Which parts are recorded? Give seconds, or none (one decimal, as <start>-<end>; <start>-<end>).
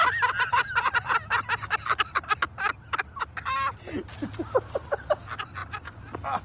0.0-6.4